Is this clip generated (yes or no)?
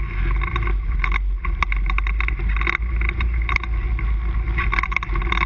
no